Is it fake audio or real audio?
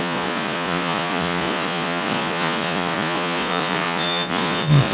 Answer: fake